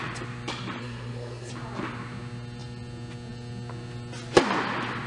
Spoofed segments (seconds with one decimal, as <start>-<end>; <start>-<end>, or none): 0.8-1.5